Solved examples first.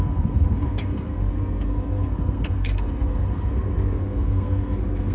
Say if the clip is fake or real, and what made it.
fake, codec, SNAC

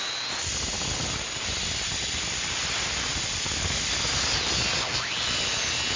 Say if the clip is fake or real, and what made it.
real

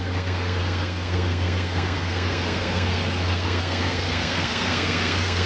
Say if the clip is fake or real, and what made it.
fake, codec, SNAC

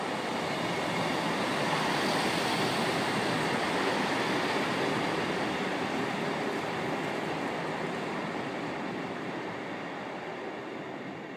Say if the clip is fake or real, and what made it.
real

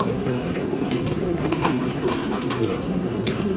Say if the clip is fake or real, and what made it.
fake, codec, SNAC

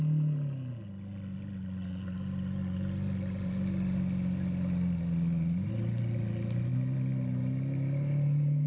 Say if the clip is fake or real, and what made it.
real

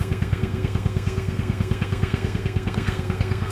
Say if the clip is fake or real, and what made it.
fake, codec, SNAC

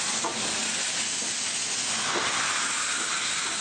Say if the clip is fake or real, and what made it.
real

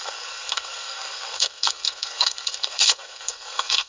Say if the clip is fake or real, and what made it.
fake, codec, SNAC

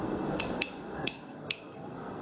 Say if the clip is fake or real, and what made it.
fake, codec, SNAC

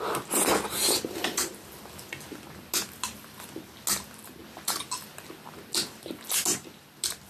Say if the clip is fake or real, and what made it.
real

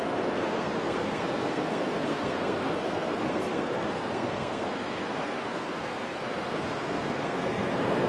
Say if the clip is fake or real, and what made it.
fake, codec, SNAC